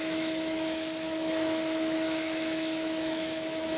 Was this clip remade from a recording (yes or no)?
yes